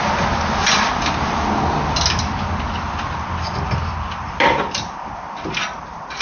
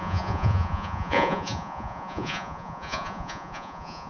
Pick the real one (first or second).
first